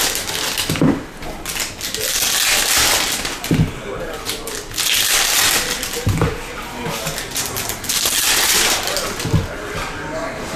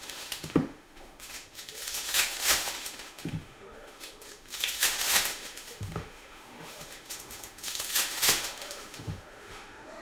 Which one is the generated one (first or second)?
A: second